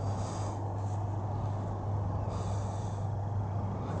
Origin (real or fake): real